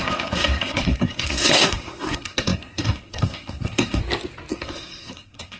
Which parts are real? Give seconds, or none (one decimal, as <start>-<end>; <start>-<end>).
4.0-4.5